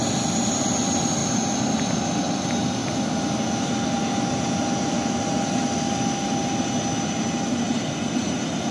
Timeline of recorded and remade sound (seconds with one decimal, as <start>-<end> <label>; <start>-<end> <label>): 0.0-8.7 recorded